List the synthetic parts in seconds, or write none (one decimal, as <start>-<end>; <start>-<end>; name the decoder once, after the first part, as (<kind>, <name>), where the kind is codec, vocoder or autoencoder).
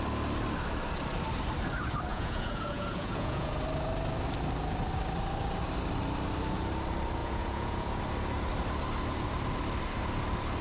2.1-3.5 (vocoder, Vocos); 7.2-8.0